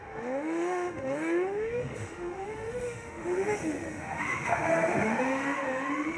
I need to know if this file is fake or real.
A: fake